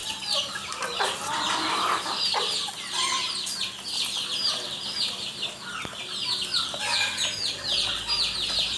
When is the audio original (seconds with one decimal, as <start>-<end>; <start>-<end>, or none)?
0.0-8.8